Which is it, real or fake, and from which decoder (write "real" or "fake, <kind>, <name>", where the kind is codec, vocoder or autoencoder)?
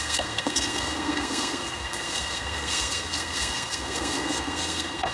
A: fake, codec, SNAC